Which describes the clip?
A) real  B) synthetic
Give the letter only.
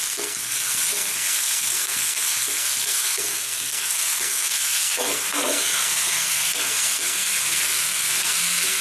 B